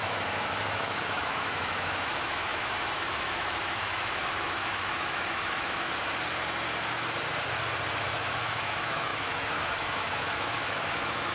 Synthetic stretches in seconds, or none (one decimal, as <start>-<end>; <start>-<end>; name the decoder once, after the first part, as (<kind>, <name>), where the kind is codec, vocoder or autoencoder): 0.0-5.9 (autoencoder, DAC-VAE); 8.0-11.3